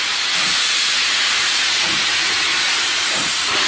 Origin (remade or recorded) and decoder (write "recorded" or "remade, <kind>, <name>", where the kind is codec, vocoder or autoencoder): remade, vocoder, Vocos